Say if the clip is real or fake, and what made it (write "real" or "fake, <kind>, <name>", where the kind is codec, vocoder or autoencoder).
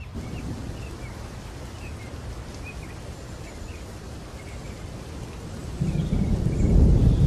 real